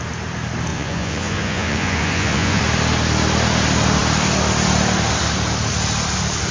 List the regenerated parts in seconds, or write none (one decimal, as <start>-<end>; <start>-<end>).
0.7-2.6